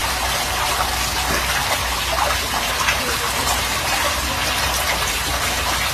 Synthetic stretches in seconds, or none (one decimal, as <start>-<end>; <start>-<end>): 0.0-0.7; 2.2-5.3